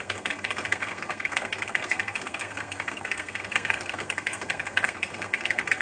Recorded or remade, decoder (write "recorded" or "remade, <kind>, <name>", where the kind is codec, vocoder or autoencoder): remade, codec, SNAC